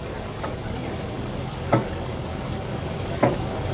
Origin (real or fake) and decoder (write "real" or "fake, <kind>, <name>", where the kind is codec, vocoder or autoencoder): fake, codec, DAC